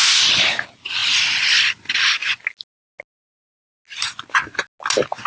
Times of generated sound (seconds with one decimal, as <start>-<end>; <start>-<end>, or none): 1.0-1.8